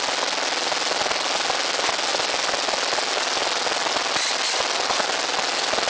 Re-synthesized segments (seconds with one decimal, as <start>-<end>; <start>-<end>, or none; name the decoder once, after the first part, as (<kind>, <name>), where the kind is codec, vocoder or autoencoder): none